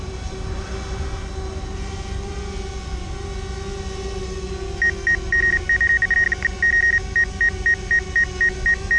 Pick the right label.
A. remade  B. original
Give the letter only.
B